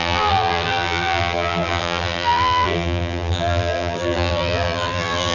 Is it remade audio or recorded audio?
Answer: remade